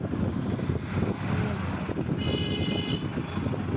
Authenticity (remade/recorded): recorded